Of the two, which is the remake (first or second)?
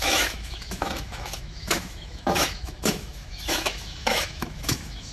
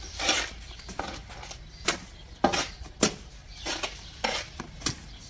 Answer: first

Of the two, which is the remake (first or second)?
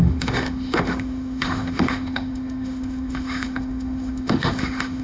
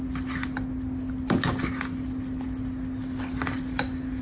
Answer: first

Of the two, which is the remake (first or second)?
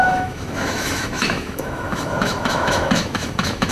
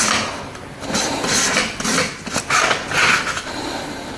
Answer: first